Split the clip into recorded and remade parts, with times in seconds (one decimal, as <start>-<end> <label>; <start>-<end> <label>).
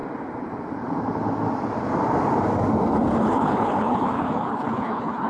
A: 0.0-3.2 recorded; 3.2-5.3 remade